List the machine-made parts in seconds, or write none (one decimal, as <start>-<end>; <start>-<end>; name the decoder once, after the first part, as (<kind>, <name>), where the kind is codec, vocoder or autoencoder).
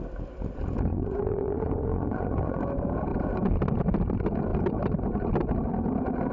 0.9-2.6 (vocoder, Vocos)